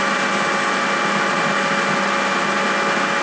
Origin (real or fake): real